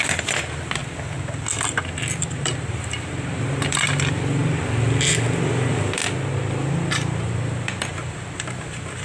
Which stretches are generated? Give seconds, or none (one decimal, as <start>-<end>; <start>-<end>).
0.0-0.8; 2.4-4.4; 5.3-6.0; 6.5-9.0